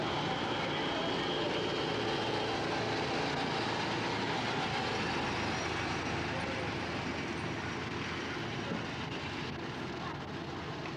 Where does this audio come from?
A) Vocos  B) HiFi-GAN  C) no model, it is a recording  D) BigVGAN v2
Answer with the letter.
C